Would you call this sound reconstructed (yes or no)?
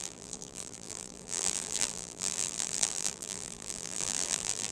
yes